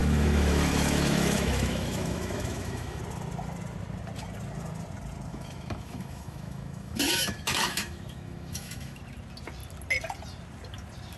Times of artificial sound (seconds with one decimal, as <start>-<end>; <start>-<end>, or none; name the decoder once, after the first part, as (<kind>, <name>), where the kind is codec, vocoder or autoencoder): 0.0-3.0 (autoencoder, DAC-VAE); 5.3-9.0